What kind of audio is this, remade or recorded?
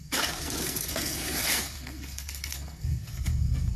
remade